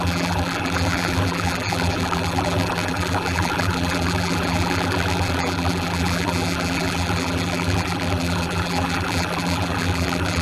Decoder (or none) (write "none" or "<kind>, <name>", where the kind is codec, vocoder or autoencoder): vocoder, BigVGAN v2